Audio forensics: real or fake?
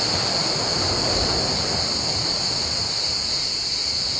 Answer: real